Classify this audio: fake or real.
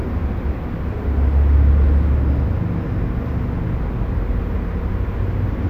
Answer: real